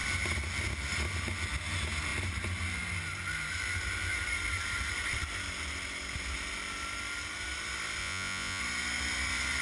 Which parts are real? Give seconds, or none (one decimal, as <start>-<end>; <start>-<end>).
0.0-8.0; 8.6-9.6